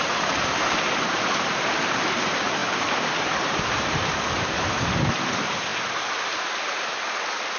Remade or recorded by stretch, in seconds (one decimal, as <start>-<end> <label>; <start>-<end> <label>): 0.0-6.9 remade; 6.9-7.6 recorded